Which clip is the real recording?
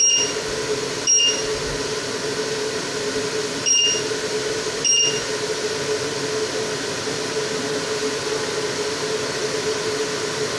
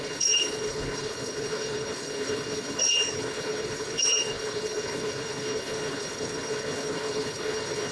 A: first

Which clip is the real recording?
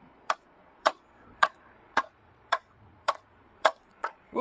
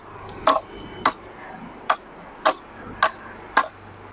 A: second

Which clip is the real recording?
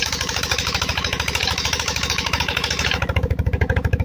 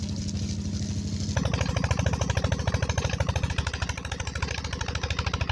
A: second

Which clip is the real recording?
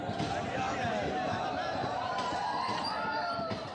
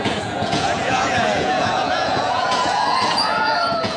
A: first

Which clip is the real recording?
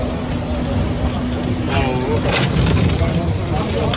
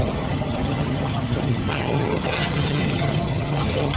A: first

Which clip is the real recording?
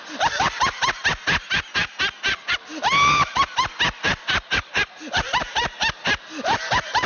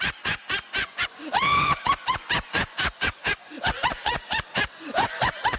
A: first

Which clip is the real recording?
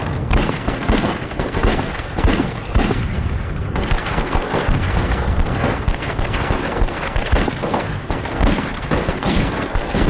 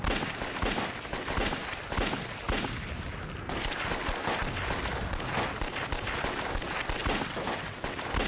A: second